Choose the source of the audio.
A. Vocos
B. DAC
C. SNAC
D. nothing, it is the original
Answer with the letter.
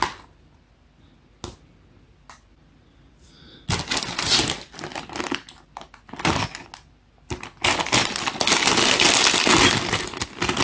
D